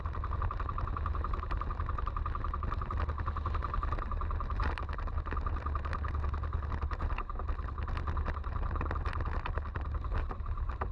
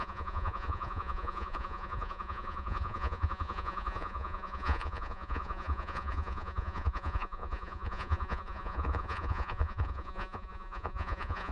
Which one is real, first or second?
first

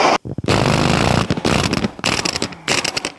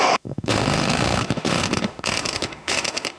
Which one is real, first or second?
first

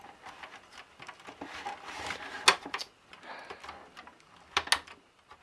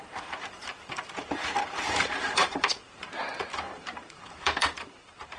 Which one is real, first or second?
first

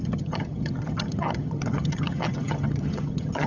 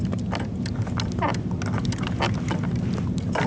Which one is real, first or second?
second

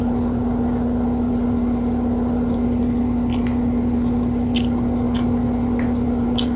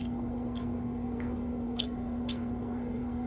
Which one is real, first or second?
first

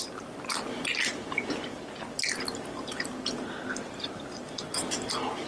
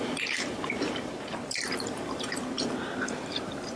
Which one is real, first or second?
first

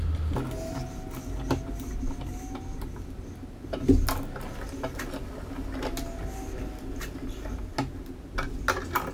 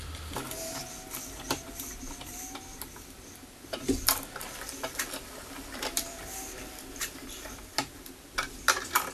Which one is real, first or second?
first